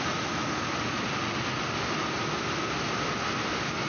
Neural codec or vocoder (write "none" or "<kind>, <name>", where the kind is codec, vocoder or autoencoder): none